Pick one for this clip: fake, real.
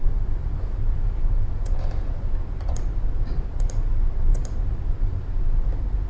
fake